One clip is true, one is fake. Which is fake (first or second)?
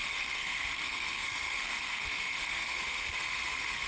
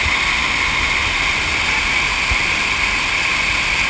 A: first